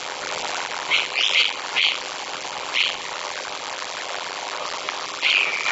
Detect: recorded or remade remade